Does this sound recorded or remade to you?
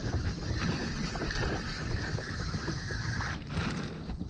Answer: recorded